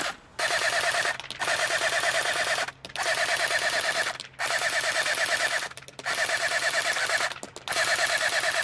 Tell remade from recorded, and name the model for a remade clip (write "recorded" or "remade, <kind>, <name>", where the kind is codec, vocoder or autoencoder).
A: recorded